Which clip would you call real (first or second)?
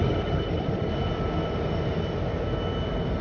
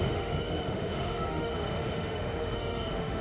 first